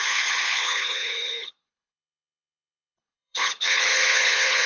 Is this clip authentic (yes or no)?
no